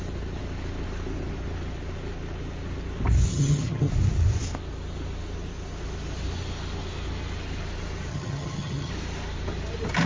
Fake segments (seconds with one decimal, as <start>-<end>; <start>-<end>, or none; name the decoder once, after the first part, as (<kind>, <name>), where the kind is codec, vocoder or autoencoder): 3.3-3.9 (vocoder, HiFi-GAN); 8.1-8.9